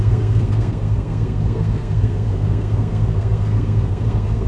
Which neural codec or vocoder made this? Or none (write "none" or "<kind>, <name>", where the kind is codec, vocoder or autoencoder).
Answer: codec, SNAC